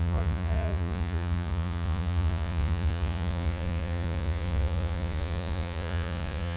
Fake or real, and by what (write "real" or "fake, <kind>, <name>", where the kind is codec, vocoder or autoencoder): fake, vocoder, Vocos